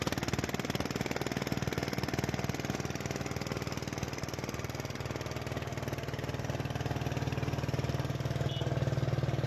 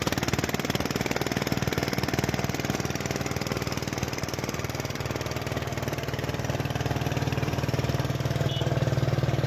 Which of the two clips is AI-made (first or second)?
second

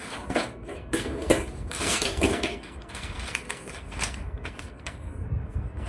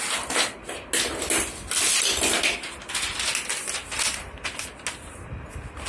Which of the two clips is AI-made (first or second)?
first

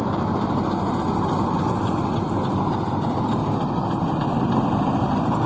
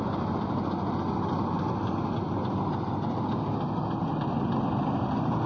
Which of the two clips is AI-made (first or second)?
first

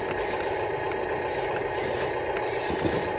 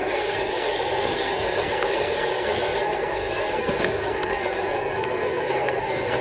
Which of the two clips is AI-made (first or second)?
second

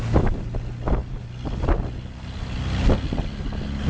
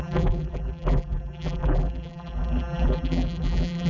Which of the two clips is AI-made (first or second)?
second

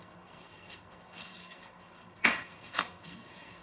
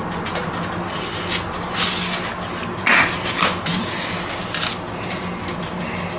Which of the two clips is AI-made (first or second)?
first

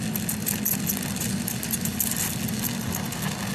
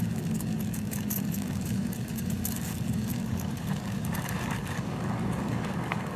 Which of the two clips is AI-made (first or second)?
second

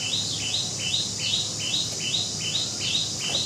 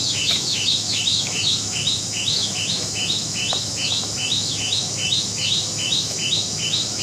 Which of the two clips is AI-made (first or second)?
second